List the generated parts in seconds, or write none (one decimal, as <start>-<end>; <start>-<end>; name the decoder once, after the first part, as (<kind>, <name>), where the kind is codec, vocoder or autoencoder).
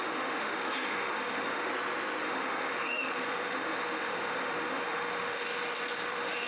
0.0-1.7 (autoencoder, DAC-VAE); 2.2-6.5